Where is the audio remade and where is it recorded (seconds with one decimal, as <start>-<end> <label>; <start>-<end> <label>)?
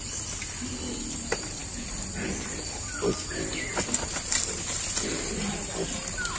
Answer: 0.0-6.4 recorded